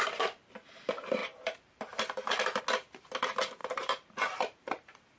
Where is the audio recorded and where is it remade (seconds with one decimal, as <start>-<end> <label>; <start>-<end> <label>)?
0.0-1.2 recorded; 1.2-2.6 remade; 2.6-3.6 recorded; 3.6-5.2 remade